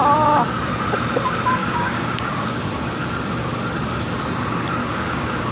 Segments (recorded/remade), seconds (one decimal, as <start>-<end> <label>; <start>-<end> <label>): 0.0-1.6 recorded; 1.6-2.7 remade; 2.7-4.8 recorded; 4.8-5.5 remade